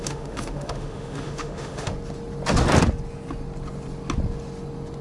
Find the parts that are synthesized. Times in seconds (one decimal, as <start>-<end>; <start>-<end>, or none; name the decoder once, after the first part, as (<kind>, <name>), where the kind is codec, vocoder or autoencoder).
0.0-1.9 (autoencoder, DAC-VAE)